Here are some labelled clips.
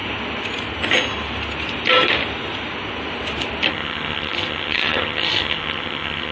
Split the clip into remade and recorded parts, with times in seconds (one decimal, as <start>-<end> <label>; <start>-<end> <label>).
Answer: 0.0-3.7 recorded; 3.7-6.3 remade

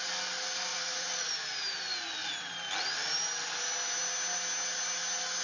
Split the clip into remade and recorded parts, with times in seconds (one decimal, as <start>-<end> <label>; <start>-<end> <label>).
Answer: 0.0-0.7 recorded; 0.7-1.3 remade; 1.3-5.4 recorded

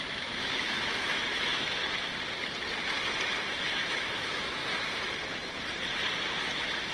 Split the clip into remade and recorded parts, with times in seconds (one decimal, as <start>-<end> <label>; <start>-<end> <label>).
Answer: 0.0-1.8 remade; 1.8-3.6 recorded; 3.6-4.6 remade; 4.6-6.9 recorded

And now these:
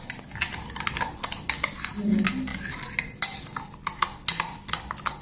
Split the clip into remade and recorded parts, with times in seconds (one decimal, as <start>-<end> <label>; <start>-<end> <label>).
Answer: 0.0-5.2 recorded